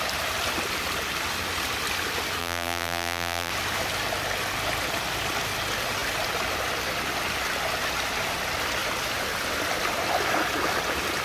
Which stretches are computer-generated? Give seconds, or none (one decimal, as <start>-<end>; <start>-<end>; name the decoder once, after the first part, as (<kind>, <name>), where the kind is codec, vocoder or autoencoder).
2.4-3.5 (vocoder, BigVGAN v2)